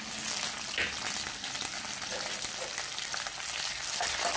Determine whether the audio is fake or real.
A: real